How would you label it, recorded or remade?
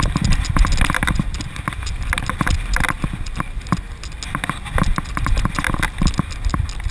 recorded